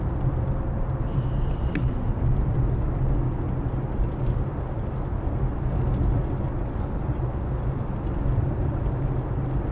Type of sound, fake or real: real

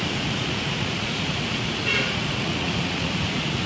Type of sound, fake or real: fake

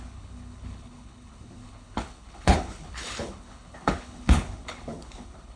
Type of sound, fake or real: fake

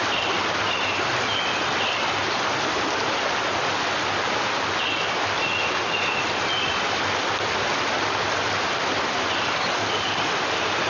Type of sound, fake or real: real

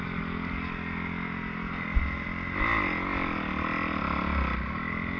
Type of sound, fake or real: real